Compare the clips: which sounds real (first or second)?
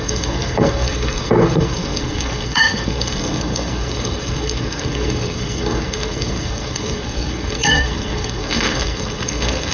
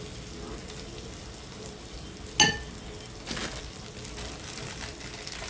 second